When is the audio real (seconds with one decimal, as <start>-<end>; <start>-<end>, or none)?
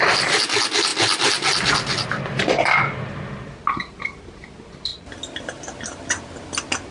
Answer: 0.0-6.9